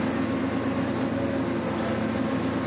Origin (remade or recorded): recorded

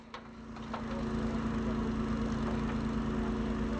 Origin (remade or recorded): recorded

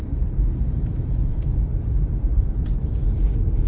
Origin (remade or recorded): remade